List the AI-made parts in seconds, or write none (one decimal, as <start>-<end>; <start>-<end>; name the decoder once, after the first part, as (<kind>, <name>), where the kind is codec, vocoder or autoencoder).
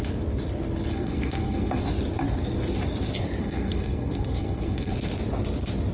0.9-1.8 (codec, SNAC); 3.4-4.9